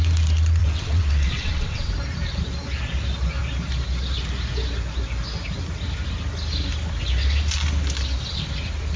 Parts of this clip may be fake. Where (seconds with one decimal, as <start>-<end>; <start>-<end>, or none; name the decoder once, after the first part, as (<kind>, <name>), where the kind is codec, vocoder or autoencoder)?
0.6-1.9 (vocoder, WaveNeXt)